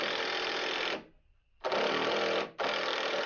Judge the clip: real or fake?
real